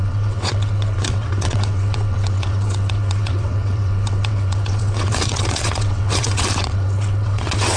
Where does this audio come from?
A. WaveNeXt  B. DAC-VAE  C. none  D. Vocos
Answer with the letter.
A